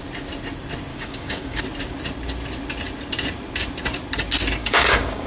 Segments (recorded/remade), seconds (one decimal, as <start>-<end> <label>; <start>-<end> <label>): 0.0-0.9 recorded; 0.9-1.6 remade; 1.6-4.6 recorded; 4.6-5.3 remade

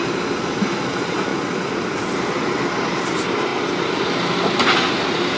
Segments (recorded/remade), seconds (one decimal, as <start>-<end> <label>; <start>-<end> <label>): 0.0-1.3 remade; 1.3-1.9 recorded; 1.9-3.5 remade; 3.5-4.9 recorded; 4.9-5.4 remade

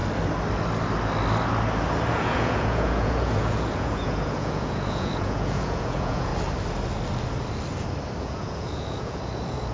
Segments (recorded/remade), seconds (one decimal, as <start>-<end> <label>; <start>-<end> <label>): 0.0-2.1 recorded; 2.1-6.3 remade; 6.3-8.2 recorded; 8.2-9.7 remade

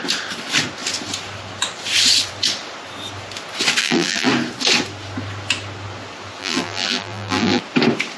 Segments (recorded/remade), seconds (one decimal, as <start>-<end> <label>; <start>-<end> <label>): 0.0-3.8 recorded; 3.8-4.3 remade; 4.3-6.4 recorded; 6.4-7.6 remade; 7.6-8.2 recorded

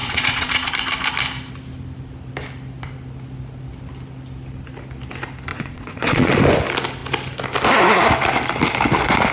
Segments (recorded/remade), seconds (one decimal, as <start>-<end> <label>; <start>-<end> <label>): 0.0-0.7 remade; 0.7-5.5 recorded; 5.5-6.3 remade; 6.3-9.3 recorded

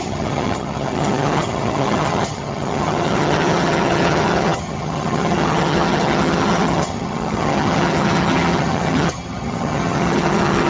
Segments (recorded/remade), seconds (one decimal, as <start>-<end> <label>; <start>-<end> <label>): 0.0-10.7 remade

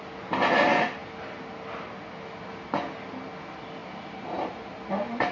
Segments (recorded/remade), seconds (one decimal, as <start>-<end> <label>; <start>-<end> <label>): 0.0-3.8 recorded; 3.8-5.3 remade